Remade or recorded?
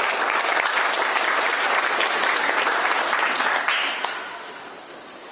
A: recorded